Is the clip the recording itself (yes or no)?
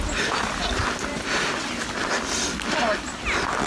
yes